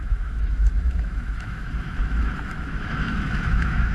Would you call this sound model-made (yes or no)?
yes